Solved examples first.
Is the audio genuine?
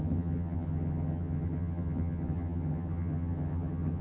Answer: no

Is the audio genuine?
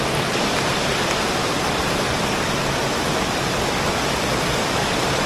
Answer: yes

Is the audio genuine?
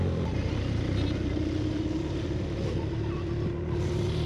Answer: yes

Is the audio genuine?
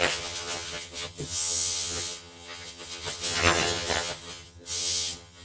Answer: no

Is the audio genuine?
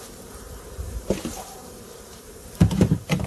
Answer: no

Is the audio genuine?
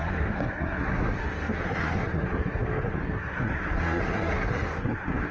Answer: no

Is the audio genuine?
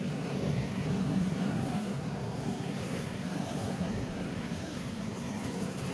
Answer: no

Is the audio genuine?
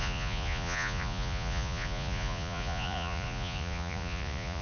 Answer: no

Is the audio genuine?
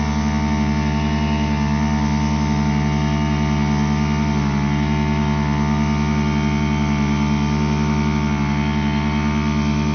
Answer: yes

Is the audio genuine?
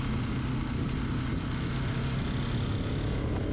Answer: yes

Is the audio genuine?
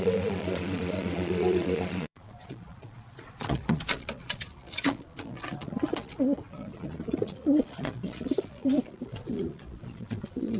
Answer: no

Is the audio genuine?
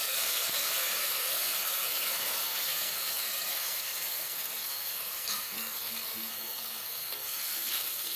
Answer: no